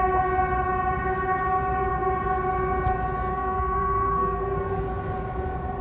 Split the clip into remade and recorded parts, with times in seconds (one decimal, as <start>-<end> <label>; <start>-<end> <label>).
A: 0.0-3.3 recorded; 3.3-4.8 remade; 4.8-5.8 recorded